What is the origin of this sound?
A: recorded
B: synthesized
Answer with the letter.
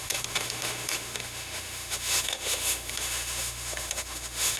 B